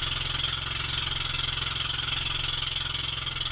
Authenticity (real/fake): real